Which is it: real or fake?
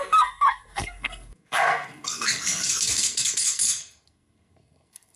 fake